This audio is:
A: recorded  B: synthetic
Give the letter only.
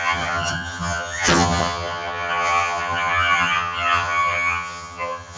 B